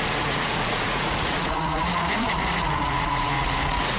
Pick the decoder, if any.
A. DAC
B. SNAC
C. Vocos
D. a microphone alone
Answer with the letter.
C